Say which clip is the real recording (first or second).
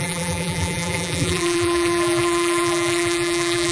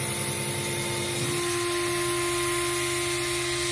second